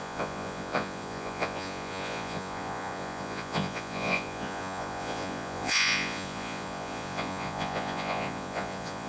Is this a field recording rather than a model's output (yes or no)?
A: no